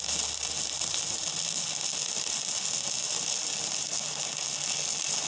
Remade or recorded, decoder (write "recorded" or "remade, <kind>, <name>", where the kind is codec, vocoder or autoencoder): recorded